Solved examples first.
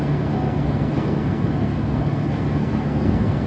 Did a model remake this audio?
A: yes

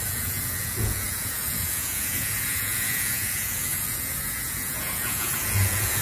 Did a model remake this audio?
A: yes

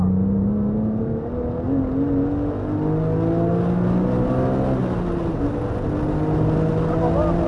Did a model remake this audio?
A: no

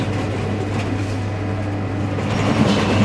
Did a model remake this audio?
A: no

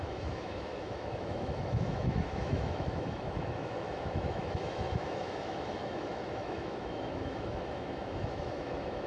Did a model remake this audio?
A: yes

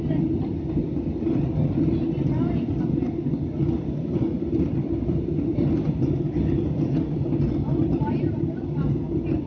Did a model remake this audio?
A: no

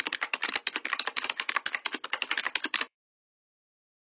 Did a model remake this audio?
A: no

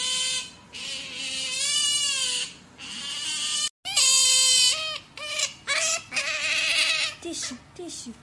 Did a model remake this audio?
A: no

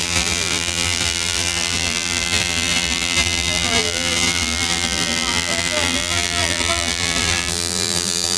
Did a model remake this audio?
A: yes